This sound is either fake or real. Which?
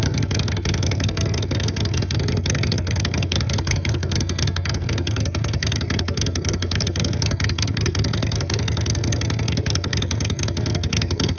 fake